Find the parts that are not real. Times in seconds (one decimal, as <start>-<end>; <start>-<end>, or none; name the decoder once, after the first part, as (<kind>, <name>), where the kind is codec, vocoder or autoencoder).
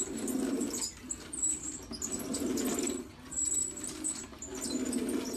none